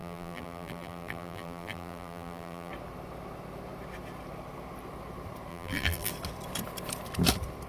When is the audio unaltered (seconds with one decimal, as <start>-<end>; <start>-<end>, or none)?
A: 2.7-5.5; 6.1-7.7

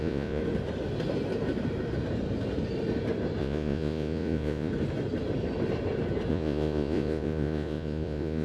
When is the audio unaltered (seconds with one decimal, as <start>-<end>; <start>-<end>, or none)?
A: 0.4-3.4; 4.7-6.3

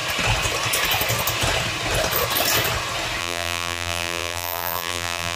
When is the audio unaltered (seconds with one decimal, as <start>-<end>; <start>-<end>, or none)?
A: 0.0-3.2

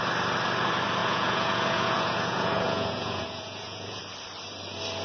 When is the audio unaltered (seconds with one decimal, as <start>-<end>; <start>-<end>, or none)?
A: 0.0-1.0; 4.0-5.0

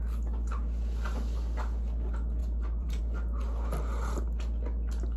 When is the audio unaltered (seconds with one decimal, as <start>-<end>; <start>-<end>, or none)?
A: 0.0-2.4; 3.0-5.2

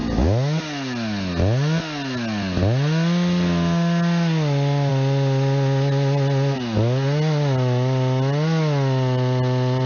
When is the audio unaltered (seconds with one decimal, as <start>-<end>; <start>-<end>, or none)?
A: 0.0-9.9